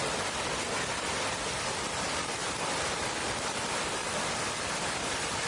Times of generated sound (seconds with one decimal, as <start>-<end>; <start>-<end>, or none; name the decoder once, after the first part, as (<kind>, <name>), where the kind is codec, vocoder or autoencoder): none